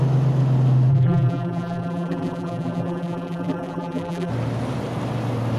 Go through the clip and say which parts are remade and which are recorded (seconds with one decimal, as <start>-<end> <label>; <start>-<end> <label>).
0.0-0.9 recorded; 0.9-4.3 remade; 4.3-5.6 recorded